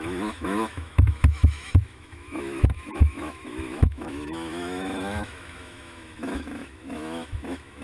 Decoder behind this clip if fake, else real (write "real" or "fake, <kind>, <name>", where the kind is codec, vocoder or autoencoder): fake, autoencoder, DAC-VAE